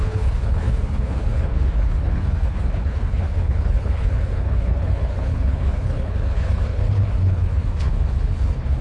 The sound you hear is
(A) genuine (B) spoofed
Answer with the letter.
B